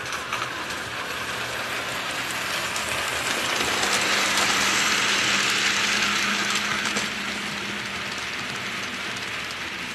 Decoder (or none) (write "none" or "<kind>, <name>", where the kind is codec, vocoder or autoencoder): none